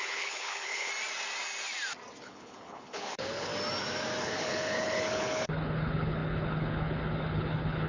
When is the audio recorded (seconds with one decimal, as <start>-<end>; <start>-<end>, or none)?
0.9-2.2; 3.5-4.2